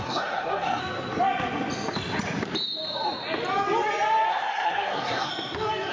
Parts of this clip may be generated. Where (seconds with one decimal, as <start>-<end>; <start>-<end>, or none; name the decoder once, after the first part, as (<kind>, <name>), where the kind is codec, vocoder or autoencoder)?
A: 0.0-0.8 (codec, SNAC); 4.3-5.3